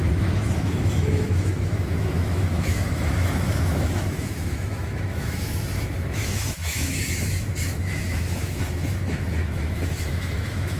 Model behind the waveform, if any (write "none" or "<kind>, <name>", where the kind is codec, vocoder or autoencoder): autoencoder, DAC-VAE